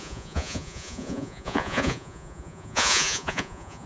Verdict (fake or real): fake